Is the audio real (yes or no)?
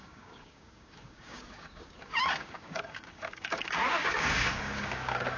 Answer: no